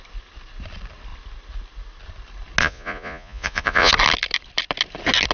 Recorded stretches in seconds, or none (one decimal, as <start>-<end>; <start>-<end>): 0.0-2.6; 3.9-5.3